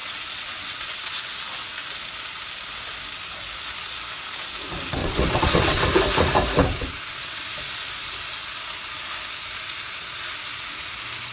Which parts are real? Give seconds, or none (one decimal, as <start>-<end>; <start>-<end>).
1.2-5.0; 5.8-6.7; 7.4-11.3